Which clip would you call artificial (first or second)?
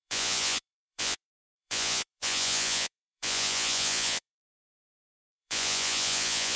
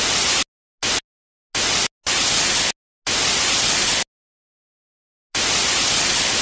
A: first